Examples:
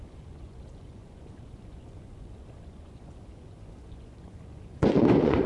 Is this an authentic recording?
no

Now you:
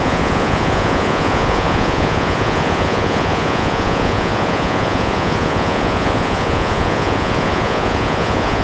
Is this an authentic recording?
no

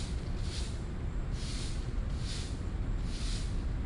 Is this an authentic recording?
yes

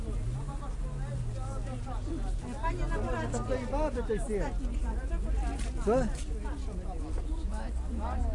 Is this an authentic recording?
yes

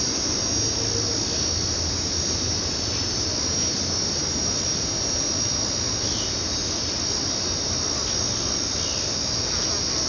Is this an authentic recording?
yes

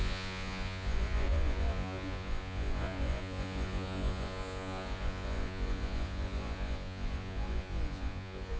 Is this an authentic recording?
no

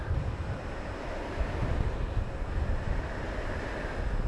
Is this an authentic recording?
yes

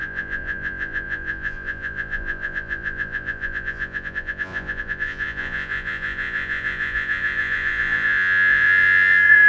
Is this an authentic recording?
no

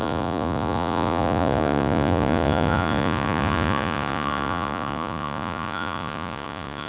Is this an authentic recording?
no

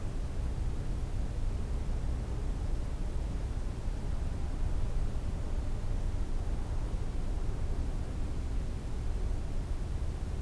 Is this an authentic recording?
yes